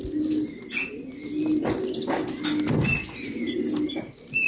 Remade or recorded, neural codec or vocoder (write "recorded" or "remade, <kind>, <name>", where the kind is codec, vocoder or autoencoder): recorded